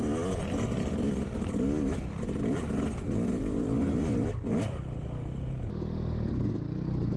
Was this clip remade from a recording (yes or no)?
no